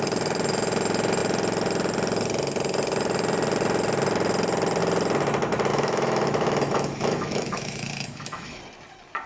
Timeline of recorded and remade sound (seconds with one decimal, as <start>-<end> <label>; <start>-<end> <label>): 0.0-5.7 recorded; 5.7-8.6 remade; 8.6-9.3 recorded